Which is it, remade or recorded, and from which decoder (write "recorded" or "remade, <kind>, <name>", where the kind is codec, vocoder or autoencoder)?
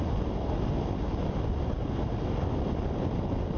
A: recorded